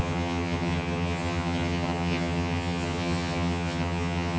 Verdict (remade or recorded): remade